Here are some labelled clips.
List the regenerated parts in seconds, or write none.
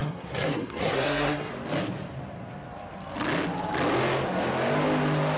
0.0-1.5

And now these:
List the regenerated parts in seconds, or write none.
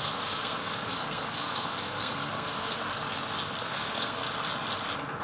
0.0-2.8; 3.6-4.2